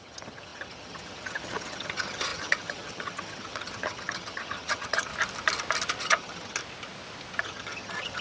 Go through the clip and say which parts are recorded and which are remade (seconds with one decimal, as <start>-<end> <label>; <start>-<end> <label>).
0.0-5.1 remade; 5.1-6.0 recorded; 6.0-6.6 remade; 6.6-7.4 recorded; 7.4-8.2 remade